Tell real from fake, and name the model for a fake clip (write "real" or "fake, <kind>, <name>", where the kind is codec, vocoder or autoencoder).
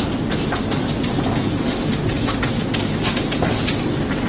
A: real